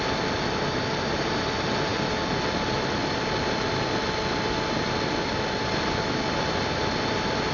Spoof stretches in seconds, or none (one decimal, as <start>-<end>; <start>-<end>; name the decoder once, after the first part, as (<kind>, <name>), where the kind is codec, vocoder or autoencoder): none